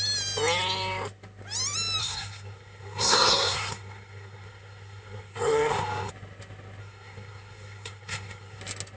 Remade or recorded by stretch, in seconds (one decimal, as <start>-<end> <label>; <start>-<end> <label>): 0.0-2.0 recorded; 2.0-6.1 remade; 6.1-6.8 recorded; 6.8-8.6 remade; 8.6-9.0 recorded